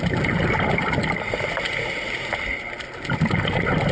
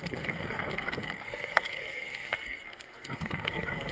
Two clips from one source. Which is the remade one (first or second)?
second